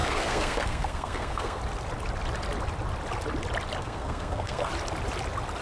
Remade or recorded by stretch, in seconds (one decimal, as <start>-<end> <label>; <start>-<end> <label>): 0.0-1.6 remade; 1.6-3.8 recorded; 3.8-4.7 remade; 4.7-5.6 recorded